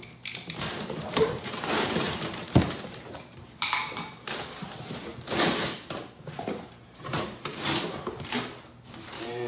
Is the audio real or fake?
fake